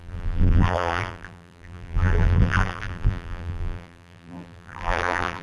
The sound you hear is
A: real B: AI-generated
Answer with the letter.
B